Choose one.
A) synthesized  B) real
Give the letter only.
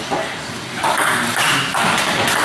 B